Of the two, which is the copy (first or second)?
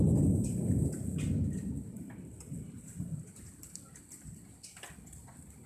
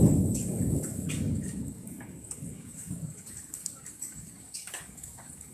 second